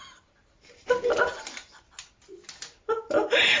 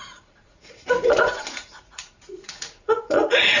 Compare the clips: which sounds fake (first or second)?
second